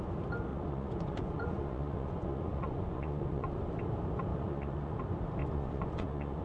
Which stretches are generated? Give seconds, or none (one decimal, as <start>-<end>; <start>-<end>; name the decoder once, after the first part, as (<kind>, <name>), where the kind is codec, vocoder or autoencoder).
0.5-3.6 (vocoder, Vocos); 4.3-5.0; 5.4-6.4

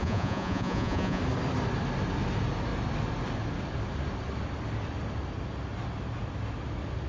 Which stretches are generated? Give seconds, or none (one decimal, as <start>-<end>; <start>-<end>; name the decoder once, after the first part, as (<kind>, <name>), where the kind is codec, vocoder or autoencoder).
0.0-1.2 (vocoder, Vocos)

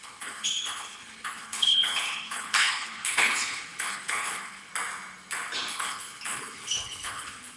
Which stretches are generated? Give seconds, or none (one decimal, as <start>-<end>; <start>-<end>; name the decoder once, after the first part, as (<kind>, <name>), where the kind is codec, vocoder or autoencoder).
0.0-4.7 (codec, HILCodec); 5.7-7.6

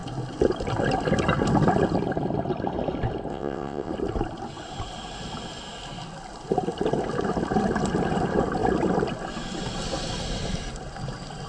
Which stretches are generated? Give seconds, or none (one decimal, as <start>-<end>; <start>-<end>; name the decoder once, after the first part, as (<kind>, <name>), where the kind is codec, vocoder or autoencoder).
3.3-3.9 (vocoder, WaveNeXt)

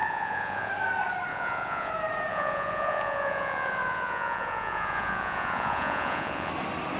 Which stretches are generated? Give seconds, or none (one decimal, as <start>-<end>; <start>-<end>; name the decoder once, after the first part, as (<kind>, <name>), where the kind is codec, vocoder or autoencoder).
0.0-0.7 (vocoder, Vocos); 1.3-1.9; 2.3-6.5

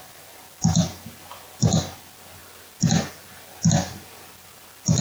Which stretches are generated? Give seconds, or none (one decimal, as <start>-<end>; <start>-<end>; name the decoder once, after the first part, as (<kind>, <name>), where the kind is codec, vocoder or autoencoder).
none